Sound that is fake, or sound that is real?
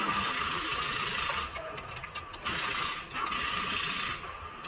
real